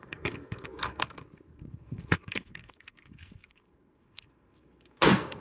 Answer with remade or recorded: remade